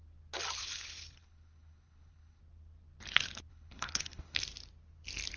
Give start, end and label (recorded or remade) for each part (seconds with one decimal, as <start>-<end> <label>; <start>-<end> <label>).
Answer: 0.0-0.6 recorded; 0.6-2.4 remade; 2.4-3.5 recorded; 3.5-4.4 remade; 4.4-5.4 recorded